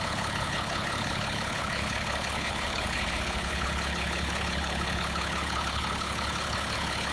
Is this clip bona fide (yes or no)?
no